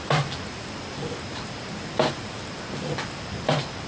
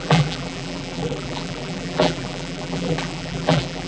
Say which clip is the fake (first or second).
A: second